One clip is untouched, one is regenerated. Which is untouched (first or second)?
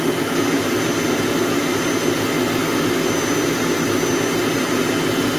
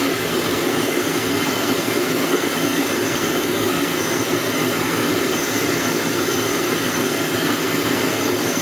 first